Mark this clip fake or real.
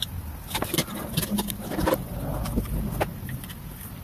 real